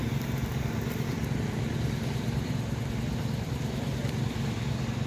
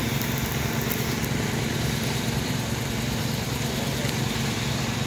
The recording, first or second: second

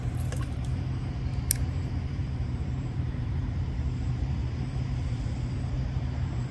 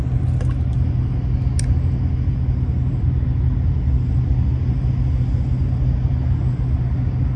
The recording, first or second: second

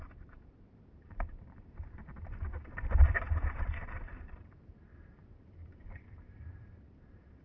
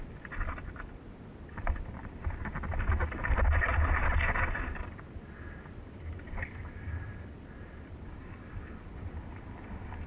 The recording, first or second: second